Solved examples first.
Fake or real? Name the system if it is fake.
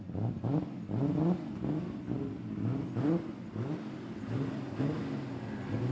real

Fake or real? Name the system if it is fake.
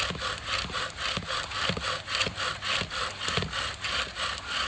real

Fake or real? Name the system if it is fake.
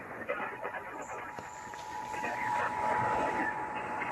fake, vocoder, Vocos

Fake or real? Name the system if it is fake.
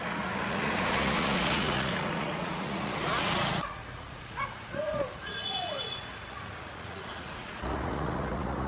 fake, vocoder, Vocos